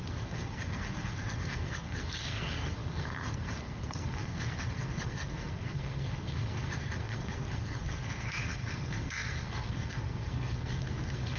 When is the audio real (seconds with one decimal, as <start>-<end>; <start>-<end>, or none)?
none